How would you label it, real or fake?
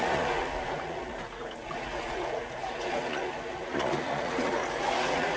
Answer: fake